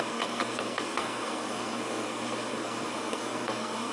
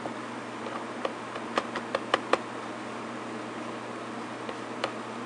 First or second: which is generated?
first